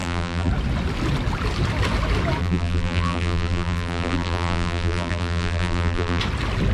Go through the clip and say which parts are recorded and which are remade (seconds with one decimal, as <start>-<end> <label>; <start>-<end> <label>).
0.0-0.5 remade; 0.5-2.4 recorded; 2.4-6.2 remade; 6.2-6.7 recorded